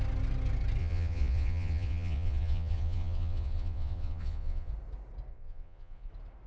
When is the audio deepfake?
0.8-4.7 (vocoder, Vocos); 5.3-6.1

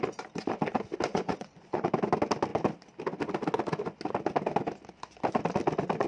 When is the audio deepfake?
1.1-1.9 (vocoder, Vocos)

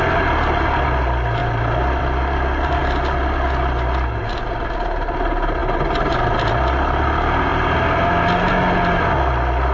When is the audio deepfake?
none

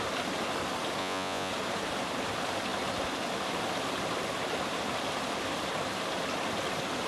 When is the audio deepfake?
1.0-1.5 (vocoder, Vocos)

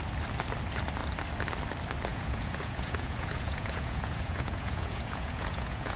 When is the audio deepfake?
2.1-6.0 (vocoder, Vocos)

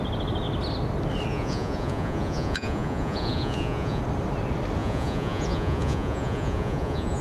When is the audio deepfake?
1.3-4.0 (vocoder, Vocos); 4.8-7.2

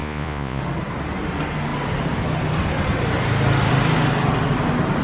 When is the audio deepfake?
0.0-0.6 (vocoder, Vocos)

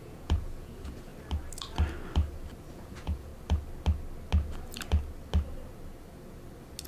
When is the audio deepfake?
0.0-1.1 (vocoder, Vocos); 2.7-3.3